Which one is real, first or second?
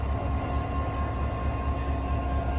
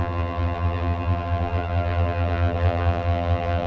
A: first